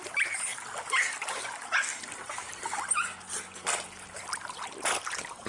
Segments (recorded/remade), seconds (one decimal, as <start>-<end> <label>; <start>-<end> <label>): 0.0-1.9 recorded; 1.9-5.5 remade